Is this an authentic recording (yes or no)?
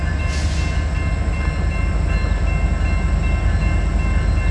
yes